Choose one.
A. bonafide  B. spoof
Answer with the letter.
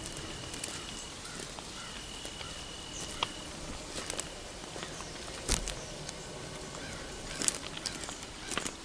A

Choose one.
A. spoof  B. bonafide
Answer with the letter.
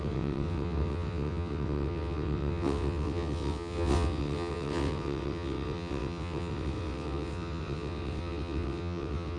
A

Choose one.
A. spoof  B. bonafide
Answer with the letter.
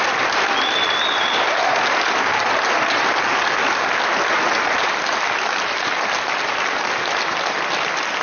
B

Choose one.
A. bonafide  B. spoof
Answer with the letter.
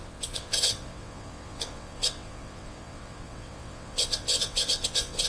B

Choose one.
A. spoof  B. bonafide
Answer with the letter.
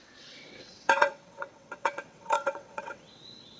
A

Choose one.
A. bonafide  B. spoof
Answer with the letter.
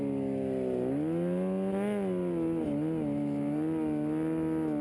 A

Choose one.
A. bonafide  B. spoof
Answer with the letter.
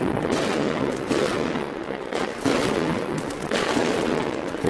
B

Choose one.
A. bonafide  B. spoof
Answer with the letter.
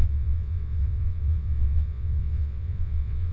B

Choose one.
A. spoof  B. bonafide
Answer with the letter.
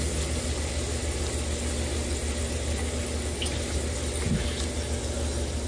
B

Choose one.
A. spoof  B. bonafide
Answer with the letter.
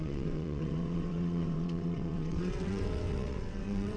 A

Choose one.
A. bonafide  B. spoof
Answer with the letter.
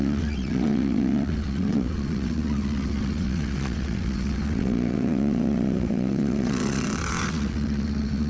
B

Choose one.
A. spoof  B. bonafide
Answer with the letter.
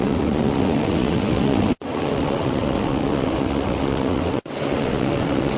A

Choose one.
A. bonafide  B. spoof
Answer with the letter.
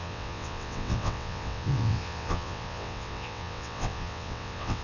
B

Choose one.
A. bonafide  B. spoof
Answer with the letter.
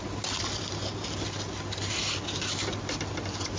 A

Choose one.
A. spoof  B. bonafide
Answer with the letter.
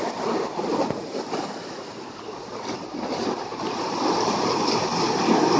B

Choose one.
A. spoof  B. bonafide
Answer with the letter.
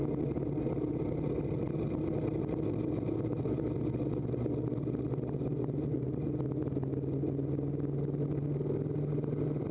B